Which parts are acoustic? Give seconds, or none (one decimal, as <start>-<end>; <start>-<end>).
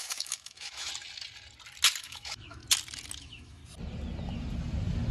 0.9-2.0; 2.6-3.2; 3.6-5.1